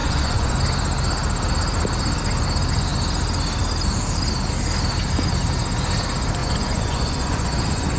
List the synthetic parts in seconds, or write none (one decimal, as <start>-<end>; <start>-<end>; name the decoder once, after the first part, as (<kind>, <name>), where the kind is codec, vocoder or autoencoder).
0.0-0.6 (vocoder, Vocos); 6.4-8.0